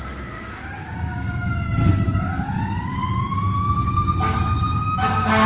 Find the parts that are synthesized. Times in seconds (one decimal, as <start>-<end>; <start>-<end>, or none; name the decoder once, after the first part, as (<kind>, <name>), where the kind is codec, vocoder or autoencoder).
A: 0.0-5.5 (codec, DAC)